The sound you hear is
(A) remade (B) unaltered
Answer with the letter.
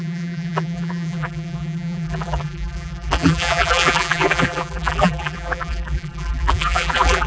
A